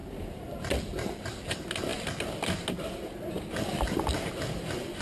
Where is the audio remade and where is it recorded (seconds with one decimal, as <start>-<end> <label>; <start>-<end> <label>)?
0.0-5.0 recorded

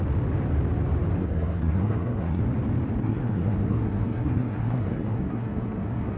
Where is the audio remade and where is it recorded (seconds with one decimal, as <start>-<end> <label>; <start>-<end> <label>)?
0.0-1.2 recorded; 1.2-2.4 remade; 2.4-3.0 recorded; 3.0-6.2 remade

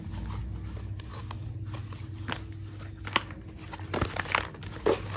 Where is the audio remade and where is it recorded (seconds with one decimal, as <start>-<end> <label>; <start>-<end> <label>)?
0.0-5.2 recorded

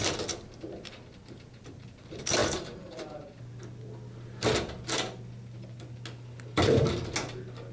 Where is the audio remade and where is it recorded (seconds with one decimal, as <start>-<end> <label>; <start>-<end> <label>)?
0.0-2.4 recorded; 2.4-3.4 remade; 3.4-7.7 recorded

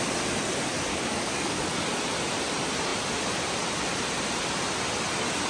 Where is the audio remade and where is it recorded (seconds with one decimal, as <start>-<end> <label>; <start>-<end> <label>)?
0.0-0.9 recorded; 0.9-1.6 remade; 1.6-5.5 recorded